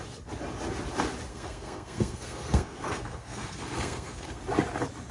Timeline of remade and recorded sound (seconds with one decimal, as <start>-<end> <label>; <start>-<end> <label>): 0.0-1.3 recorded; 1.3-4.4 remade; 4.4-5.1 recorded